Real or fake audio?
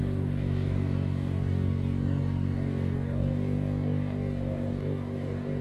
fake